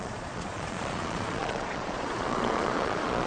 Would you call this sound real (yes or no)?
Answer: no